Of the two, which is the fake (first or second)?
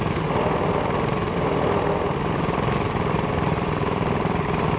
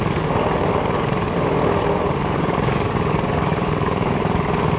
second